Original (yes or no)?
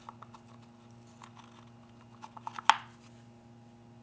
yes